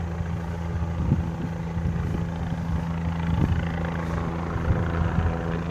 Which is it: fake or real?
real